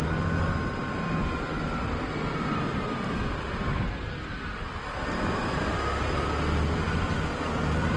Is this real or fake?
real